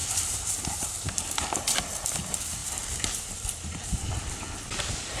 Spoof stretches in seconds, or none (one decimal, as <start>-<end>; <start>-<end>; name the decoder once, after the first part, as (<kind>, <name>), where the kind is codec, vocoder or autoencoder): 0.0-0.5 (vocoder, BigVGAN v2); 2.6-4.0